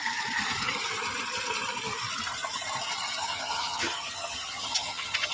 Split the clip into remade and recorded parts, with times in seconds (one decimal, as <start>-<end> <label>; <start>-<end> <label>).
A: 0.0-3.2 recorded; 3.2-5.3 remade